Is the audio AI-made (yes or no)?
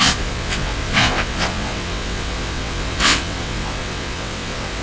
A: yes